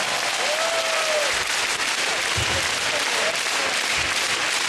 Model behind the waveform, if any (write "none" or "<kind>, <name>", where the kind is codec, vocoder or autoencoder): none